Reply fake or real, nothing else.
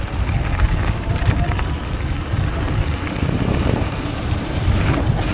real